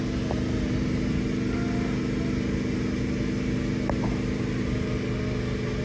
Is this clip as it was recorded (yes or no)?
yes